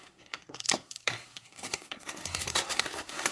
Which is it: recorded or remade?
remade